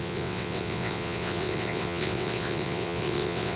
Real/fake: fake